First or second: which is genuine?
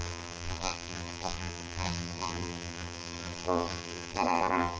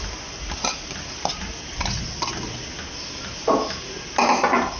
second